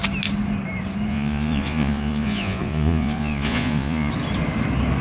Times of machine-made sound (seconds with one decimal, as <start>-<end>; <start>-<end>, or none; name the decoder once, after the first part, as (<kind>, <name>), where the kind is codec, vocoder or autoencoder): 1.1-4.1 (vocoder, Vocos)